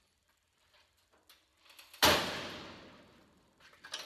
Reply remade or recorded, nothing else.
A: recorded